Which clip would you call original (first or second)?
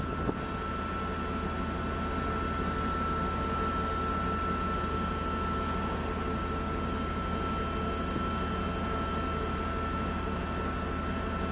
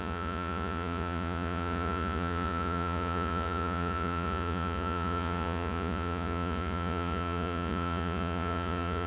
first